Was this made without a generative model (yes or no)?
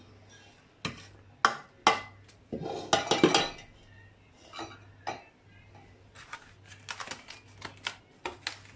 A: yes